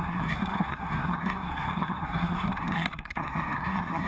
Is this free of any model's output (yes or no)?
no